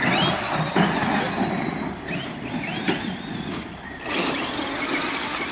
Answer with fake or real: real